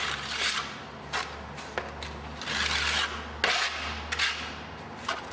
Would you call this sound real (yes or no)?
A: yes